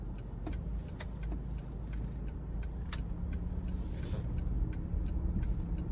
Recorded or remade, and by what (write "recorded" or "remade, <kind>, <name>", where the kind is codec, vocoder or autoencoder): recorded